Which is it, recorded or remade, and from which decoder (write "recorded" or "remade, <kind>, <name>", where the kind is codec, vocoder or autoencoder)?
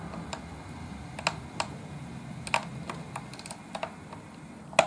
recorded